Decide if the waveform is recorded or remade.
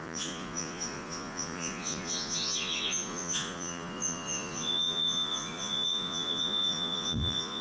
remade